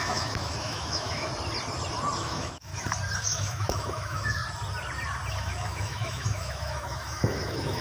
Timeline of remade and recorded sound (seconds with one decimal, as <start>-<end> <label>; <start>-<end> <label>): 0.0-1.3 remade; 1.3-2.2 recorded; 2.2-2.7 remade; 2.7-3.2 recorded; 3.2-4.4 remade; 4.4-5.3 recorded; 5.3-7.8 remade